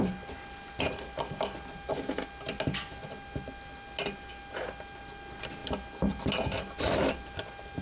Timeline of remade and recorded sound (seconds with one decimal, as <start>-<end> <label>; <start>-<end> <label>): 0.0-7.8 recorded